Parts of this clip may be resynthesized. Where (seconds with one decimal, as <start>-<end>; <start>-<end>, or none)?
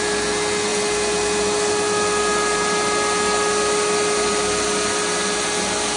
none